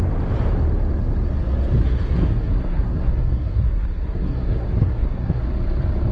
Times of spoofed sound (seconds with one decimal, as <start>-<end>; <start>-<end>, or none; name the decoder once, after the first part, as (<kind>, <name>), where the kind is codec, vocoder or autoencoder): 1.8-5.4 (codec, SNAC)